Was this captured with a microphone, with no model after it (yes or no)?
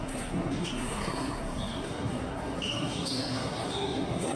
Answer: no